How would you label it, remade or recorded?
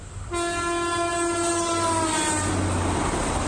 recorded